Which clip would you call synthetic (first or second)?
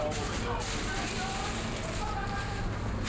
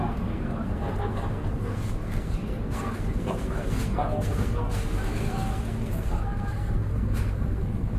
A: second